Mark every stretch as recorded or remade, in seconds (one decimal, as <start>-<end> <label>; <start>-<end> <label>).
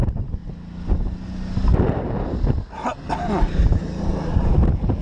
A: 0.0-0.4 remade; 0.4-3.4 recorded; 3.4-5.0 remade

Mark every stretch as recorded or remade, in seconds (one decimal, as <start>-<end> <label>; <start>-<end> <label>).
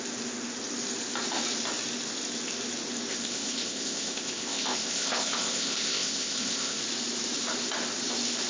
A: 0.0-3.1 recorded; 3.1-6.8 remade; 6.8-8.5 recorded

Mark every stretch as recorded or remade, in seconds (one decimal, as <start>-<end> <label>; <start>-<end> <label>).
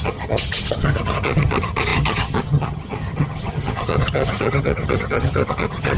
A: 0.0-6.0 remade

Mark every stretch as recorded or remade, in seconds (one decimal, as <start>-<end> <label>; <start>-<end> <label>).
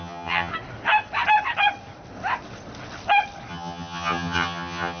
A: 0.0-0.5 remade; 0.5-3.5 recorded; 3.5-5.0 remade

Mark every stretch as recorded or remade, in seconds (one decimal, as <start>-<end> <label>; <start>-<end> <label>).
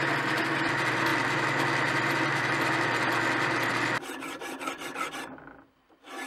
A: 0.0-6.3 recorded